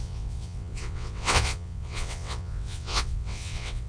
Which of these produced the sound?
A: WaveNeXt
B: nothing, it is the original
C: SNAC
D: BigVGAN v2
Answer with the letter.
A